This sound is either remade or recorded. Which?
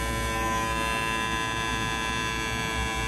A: recorded